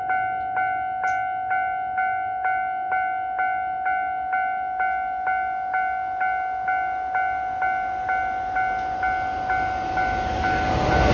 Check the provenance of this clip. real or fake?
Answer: real